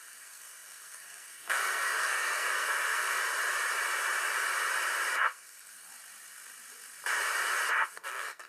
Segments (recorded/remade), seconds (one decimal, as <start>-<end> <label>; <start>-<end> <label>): 0.0-3.2 remade; 3.2-5.2 recorded; 5.2-5.9 remade; 5.9-7.8 recorded; 7.8-8.5 remade